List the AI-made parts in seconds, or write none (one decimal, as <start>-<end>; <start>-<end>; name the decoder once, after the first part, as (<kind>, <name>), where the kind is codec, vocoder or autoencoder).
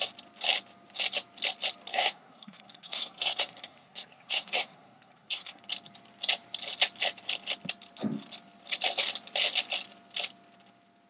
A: 1.9-5.6 (codec, SNAC)